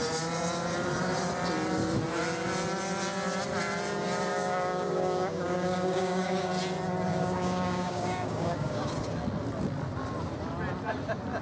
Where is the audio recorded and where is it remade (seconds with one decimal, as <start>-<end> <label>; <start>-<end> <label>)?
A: 0.0-4.3 recorded; 4.3-6.5 remade; 6.5-7.1 recorded; 7.1-8.9 remade; 8.9-11.4 recorded